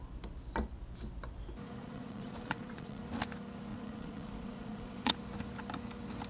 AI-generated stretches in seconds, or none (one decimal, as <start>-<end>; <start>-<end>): 1.8-3.0; 3.7-5.1